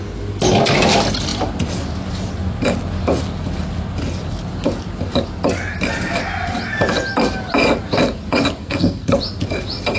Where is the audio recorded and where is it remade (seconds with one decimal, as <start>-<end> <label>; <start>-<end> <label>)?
0.0-8.6 recorded; 8.6-9.2 remade; 9.2-10.0 recorded